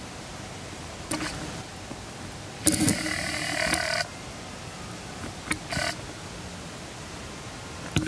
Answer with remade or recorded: recorded